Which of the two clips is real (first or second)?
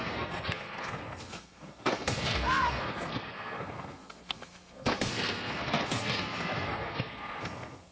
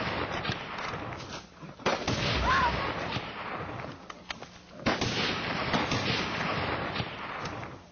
second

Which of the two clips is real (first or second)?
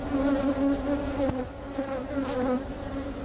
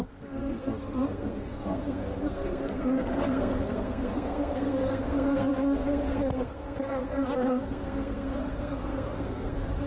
first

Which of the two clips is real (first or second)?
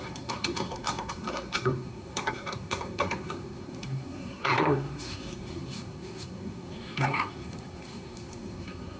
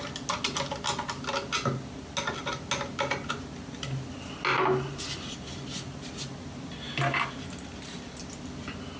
second